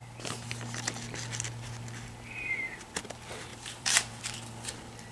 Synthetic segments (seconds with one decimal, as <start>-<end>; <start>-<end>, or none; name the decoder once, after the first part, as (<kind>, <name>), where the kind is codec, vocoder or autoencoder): 3.5-4.2 (vocoder, BigVGAN v2)